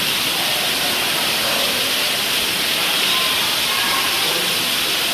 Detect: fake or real real